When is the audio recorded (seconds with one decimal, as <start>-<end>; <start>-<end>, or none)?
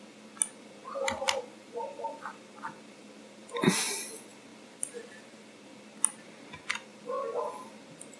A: 0.0-8.2